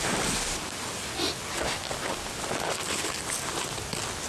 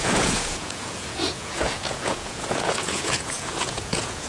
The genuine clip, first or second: first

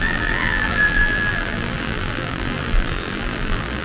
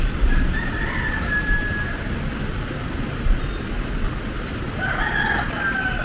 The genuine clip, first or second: second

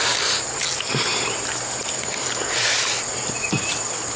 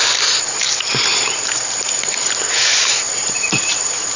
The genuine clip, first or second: first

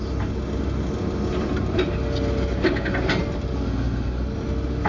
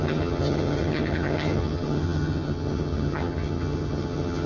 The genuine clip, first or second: first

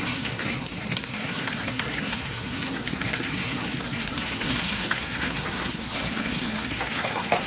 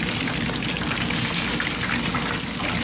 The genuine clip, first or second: second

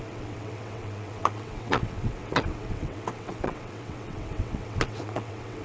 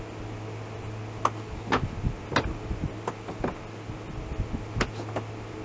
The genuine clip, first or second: second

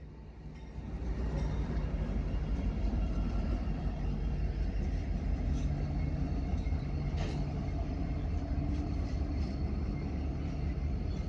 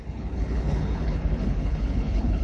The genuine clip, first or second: first